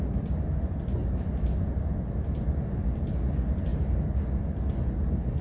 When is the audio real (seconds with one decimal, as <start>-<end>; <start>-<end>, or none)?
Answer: 0.0-5.4